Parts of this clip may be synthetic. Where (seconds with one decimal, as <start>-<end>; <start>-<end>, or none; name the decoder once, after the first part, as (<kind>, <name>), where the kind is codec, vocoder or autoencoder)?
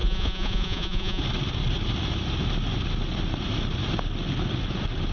0.0-1.2 (vocoder, Vocos)